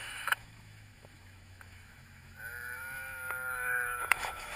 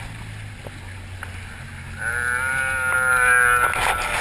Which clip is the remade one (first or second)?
first